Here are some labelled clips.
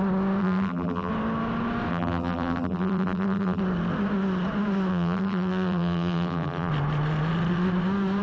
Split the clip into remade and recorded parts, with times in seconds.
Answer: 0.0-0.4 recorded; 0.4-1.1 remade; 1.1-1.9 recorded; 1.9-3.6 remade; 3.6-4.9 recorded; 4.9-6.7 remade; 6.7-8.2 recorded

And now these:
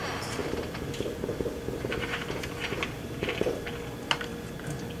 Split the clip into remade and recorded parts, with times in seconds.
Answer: 0.0-5.0 recorded

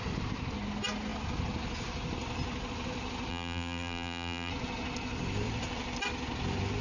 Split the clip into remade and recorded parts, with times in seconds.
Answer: 0.0-3.3 recorded; 3.3-4.5 remade; 4.5-6.8 recorded

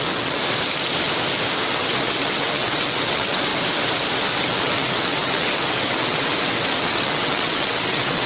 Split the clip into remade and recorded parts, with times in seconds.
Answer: 0.0-0.4 remade; 0.4-1.7 recorded; 1.7-3.5 remade; 3.5-4.4 recorded; 4.4-8.3 remade